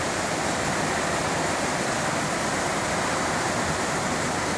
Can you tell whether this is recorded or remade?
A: recorded